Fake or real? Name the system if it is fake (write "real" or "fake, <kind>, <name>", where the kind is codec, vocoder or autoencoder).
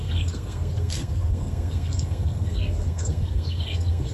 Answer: fake, codec, SNAC